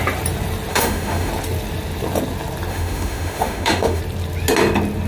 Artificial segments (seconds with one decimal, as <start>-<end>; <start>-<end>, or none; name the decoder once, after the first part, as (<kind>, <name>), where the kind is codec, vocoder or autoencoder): 0.7-1.3 (autoencoder, DAC-VAE); 2.7-4.0